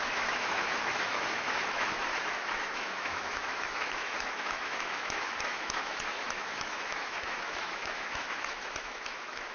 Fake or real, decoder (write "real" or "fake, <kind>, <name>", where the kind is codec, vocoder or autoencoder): fake, autoencoder, DAC-VAE